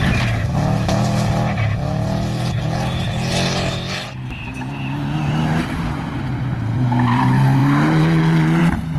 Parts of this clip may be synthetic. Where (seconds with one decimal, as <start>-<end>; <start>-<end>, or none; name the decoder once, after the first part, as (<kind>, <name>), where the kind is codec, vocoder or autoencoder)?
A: none